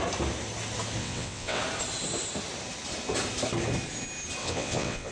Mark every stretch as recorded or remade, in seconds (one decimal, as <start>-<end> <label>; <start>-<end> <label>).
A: 0.0-1.0 recorded; 1.0-1.6 remade; 1.6-4.4 recorded; 4.4-5.1 remade